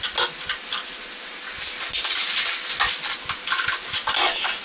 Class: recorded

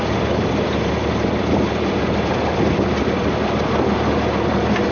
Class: remade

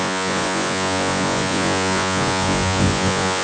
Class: remade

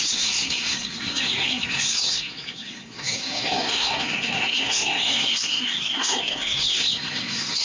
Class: remade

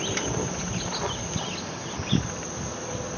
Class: recorded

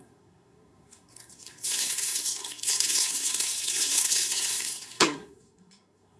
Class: remade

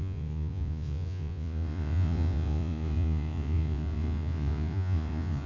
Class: remade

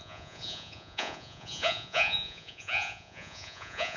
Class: remade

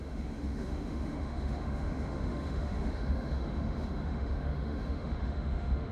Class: remade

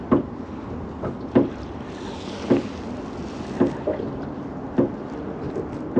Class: recorded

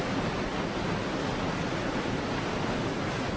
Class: recorded